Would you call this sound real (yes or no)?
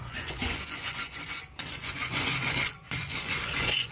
no